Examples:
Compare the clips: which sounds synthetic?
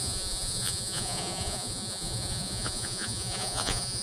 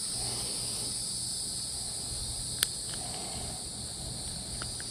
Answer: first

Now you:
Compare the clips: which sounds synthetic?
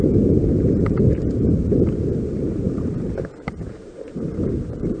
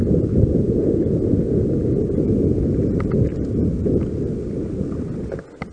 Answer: first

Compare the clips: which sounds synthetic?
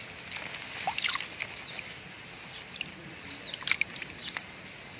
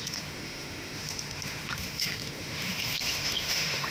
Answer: second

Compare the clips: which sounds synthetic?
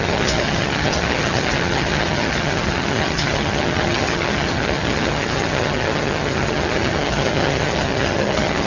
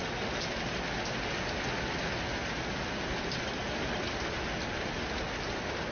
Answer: first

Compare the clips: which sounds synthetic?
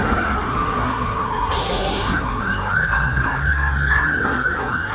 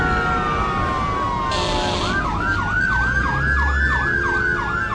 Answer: first